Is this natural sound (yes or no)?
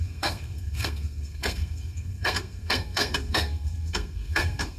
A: no